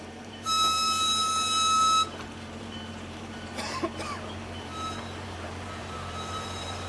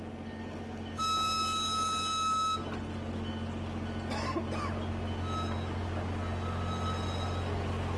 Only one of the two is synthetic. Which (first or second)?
first